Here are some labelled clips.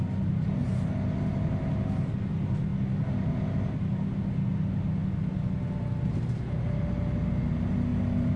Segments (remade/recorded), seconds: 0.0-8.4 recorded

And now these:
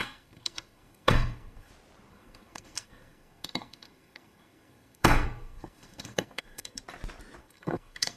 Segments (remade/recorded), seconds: 0.0-1.7 remade; 1.7-2.1 recorded; 2.1-6.8 remade; 6.8-7.4 recorded; 7.4-8.2 remade

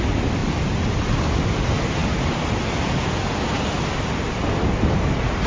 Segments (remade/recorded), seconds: 0.0-5.5 recorded

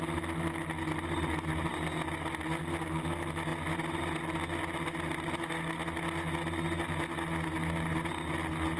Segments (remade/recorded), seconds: 0.0-8.8 recorded

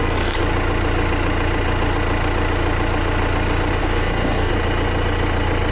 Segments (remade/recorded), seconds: 0.0-0.4 remade; 0.4-3.8 recorded; 3.8-4.5 remade; 4.5-5.7 recorded

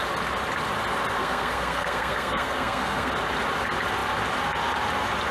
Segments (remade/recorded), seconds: 0.0-1.2 recorded; 1.2-3.1 remade; 3.1-5.3 recorded

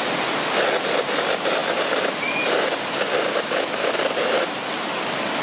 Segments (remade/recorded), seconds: 0.0-5.4 recorded